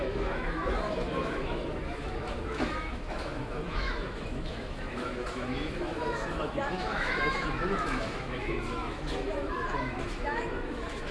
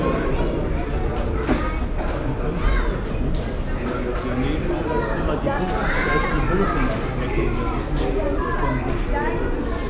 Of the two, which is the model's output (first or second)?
first